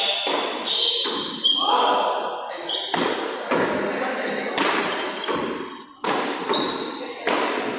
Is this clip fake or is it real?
real